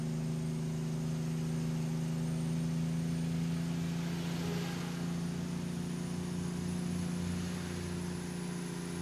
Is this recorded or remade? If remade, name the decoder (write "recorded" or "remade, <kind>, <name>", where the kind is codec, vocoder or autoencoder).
recorded